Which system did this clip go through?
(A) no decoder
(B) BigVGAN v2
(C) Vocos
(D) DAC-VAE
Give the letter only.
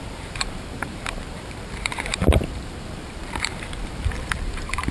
B